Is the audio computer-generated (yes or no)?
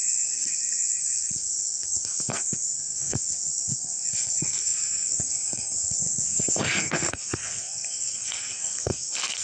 yes